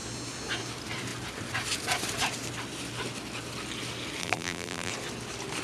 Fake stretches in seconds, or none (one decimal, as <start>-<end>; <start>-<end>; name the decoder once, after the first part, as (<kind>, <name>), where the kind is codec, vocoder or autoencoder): 4.2-4.9 (vocoder, BigVGAN v2)